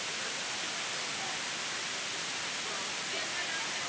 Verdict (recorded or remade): recorded